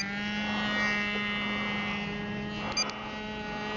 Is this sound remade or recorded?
recorded